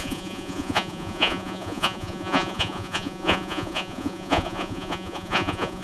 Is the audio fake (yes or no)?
yes